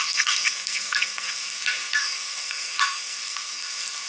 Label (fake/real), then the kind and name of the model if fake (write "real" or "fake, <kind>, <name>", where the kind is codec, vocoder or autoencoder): fake, codec, SNAC